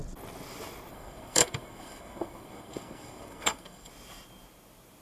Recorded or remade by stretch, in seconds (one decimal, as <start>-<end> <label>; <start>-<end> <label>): 0.0-0.9 recorded; 0.9-3.9 remade; 3.9-5.0 recorded